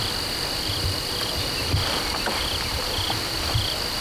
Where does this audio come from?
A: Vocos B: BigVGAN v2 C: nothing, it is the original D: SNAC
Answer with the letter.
B